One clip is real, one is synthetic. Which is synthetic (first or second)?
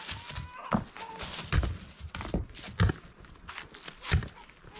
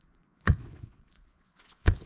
second